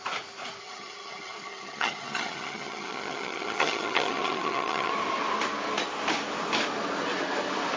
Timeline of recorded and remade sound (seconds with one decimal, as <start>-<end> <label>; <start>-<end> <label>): 0.0-0.6 recorded; 0.6-4.9 remade; 4.9-7.8 recorded

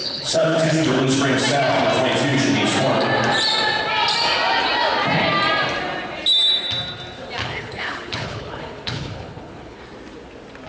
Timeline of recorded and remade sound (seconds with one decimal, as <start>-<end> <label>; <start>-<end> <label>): 0.0-1.2 remade; 1.2-7.4 recorded; 7.4-9.8 remade; 9.8-10.7 recorded

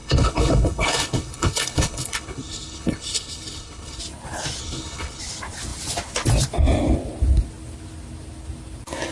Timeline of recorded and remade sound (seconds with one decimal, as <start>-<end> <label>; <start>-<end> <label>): 0.0-4.0 remade; 4.0-4.6 recorded; 4.6-5.2 remade; 5.2-9.1 recorded

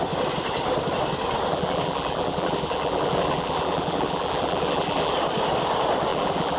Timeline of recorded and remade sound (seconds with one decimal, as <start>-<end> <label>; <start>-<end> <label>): 0.0-1.5 recorded; 1.5-5.1 remade; 5.1-6.1 recorded; 6.1-6.6 remade

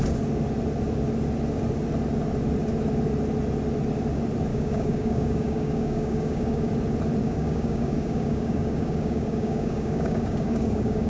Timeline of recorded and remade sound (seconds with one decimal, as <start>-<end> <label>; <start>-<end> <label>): 0.0-4.5 recorded; 4.5-6.7 remade; 6.7-7.2 recorded; 7.2-11.1 remade

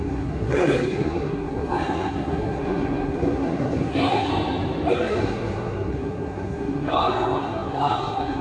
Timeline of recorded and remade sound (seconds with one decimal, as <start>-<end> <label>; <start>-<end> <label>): 0.0-4.3 remade; 4.3-4.9 recorded; 4.9-8.4 remade

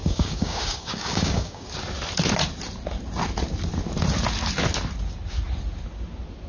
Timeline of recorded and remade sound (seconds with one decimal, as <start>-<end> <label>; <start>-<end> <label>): 0.0-1.7 remade; 1.7-6.5 recorded

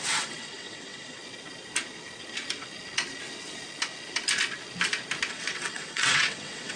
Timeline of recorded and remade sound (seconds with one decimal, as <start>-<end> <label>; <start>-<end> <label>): 0.0-1.2 remade; 1.2-5.3 recorded; 5.3-6.8 remade